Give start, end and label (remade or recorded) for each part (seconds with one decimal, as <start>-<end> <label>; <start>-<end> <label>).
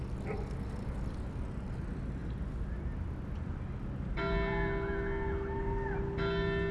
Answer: 0.0-6.7 recorded